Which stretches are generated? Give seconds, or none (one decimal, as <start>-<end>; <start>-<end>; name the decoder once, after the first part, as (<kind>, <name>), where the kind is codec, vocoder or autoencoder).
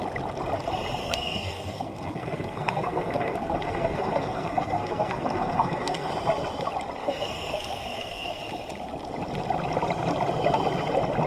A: 1.0-6.1 (codec, SNAC); 7.0-8.4